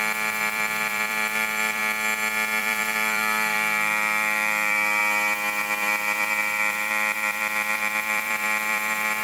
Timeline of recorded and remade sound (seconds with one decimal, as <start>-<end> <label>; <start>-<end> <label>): 0.0-1.8 remade; 1.8-2.6 recorded; 2.6-5.0 remade; 5.0-5.6 recorded; 5.6-9.2 remade